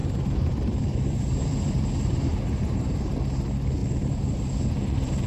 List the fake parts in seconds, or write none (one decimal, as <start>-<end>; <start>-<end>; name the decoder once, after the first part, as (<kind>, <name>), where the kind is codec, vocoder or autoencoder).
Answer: 0.0-3.2 (vocoder, BigVGAN v2); 3.8-5.3